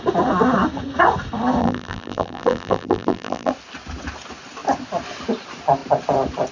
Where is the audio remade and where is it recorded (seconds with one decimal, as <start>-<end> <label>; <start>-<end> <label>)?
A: 0.0-1.6 recorded; 1.6-3.5 remade; 3.5-6.5 recorded